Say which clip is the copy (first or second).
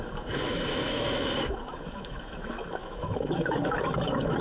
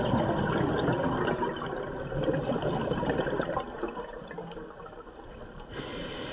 first